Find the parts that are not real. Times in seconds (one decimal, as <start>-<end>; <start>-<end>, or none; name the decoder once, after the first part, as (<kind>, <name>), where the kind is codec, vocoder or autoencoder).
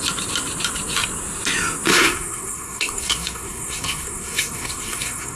1.9-5.4 (codec, SNAC)